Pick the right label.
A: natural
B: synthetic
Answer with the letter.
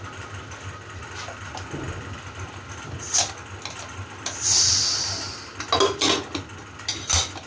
A